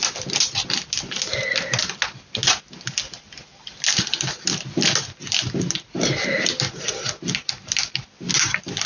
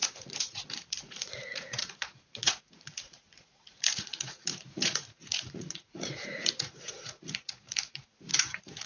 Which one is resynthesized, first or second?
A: second